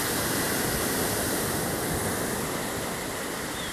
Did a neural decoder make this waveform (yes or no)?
no